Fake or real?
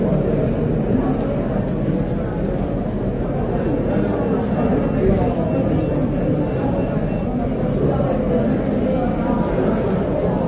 real